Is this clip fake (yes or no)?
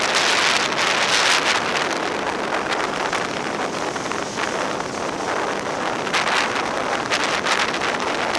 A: no